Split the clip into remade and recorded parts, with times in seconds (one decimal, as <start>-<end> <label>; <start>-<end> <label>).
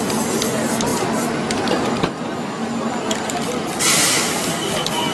0.0-5.1 recorded